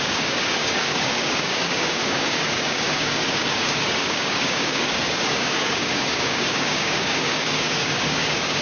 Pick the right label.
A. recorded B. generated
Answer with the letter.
B